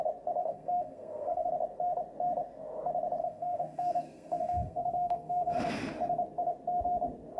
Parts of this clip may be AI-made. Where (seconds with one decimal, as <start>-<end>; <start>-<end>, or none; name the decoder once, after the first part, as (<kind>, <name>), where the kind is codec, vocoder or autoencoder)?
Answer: 0.4-1.5 (codec, SNAC); 3.2-5.8